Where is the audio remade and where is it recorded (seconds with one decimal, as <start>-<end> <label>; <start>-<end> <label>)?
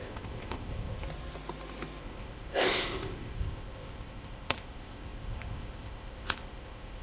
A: 0.0-1.0 remade; 1.0-2.0 recorded; 2.0-7.0 remade